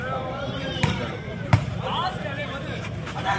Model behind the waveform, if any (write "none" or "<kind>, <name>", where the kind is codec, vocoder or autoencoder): vocoder, BigVGAN v2